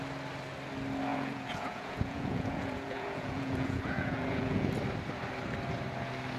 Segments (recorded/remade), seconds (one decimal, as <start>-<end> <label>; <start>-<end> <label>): 0.0-1.1 recorded; 1.1-4.7 remade; 4.7-6.4 recorded